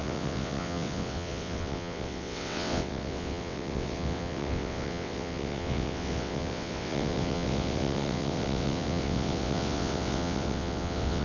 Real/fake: fake